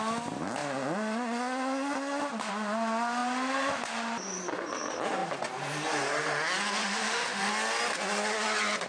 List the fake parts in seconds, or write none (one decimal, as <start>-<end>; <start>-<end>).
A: 6.8-7.5